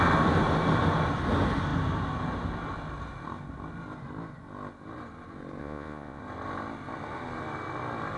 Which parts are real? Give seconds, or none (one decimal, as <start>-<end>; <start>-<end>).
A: 0.0-5.6; 6.2-8.2